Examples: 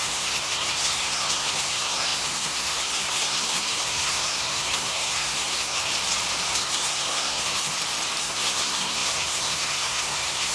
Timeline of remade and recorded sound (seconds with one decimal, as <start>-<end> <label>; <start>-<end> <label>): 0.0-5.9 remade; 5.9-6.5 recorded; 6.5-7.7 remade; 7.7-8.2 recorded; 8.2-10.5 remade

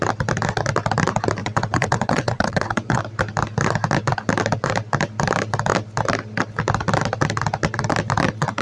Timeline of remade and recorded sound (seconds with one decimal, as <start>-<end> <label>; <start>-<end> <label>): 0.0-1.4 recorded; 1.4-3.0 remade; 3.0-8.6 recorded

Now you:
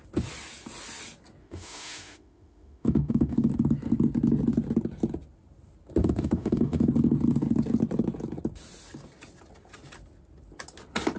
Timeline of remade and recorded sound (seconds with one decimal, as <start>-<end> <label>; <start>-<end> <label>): 0.0-1.4 recorded; 1.4-3.5 remade; 3.5-6.0 recorded; 6.0-6.9 remade; 6.9-11.2 recorded